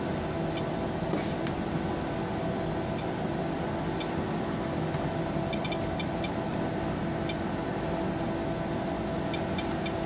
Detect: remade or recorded recorded